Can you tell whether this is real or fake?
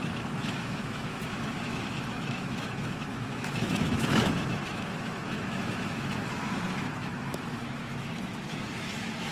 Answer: fake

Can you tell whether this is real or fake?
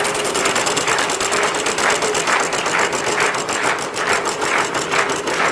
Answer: real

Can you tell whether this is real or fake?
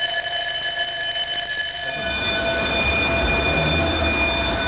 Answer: real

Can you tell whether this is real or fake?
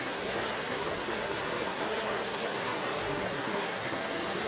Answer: fake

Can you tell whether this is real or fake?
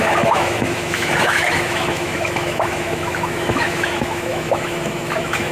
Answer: fake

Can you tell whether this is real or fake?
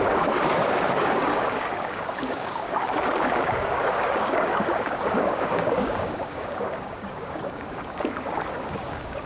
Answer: fake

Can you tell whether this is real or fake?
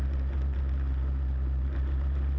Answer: real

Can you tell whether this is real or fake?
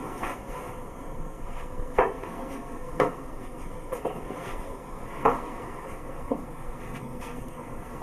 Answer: fake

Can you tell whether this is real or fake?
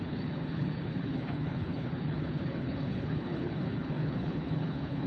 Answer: fake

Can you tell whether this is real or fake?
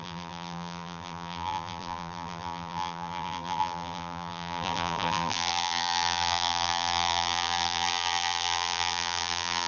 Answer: fake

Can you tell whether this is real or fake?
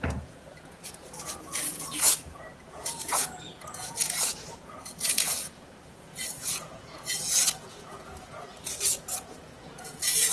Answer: fake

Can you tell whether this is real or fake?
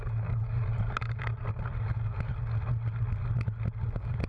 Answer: real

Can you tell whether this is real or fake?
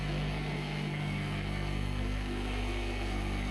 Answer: fake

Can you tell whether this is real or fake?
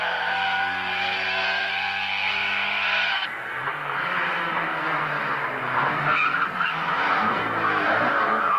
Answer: fake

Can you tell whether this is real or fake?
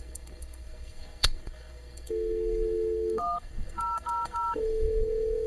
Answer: fake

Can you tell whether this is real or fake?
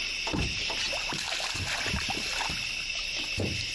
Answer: real